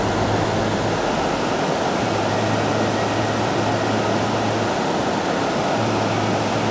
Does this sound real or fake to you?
real